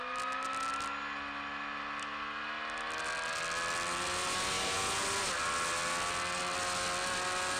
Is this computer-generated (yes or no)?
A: no